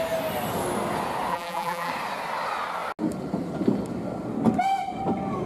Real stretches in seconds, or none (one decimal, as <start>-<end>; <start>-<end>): 0.0-1.3; 1.9-5.5